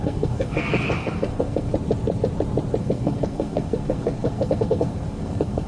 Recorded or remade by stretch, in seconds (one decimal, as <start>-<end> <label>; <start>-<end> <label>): 0.0-1.7 remade; 1.7-2.8 recorded; 2.8-5.7 remade